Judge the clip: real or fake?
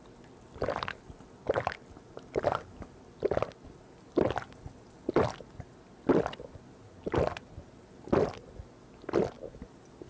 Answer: real